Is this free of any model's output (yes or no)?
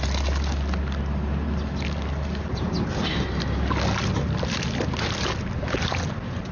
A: yes